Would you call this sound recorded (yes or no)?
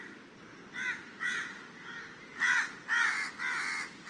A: yes